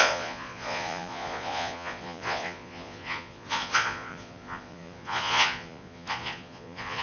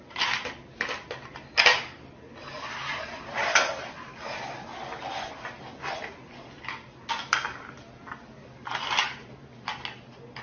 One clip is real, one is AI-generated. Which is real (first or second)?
second